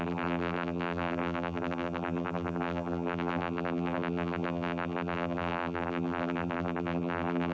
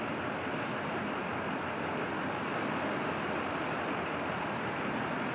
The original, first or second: second